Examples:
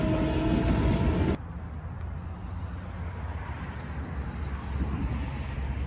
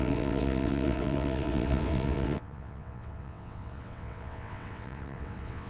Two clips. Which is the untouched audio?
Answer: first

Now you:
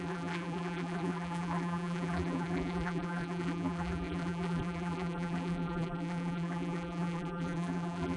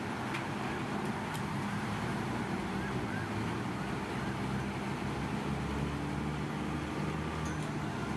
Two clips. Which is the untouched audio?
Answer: second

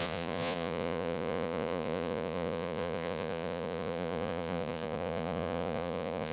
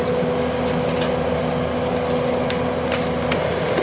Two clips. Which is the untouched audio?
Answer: second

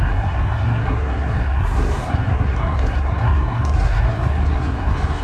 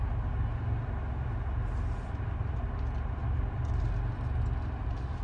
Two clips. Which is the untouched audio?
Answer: second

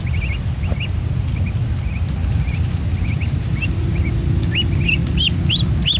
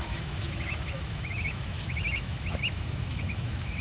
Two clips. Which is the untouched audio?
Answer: first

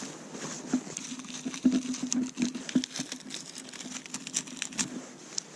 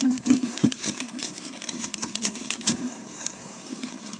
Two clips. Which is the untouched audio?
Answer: first